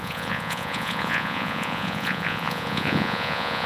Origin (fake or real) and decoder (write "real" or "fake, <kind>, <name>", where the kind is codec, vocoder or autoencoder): fake, vocoder, Vocos